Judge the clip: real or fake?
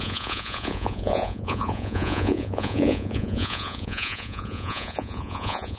fake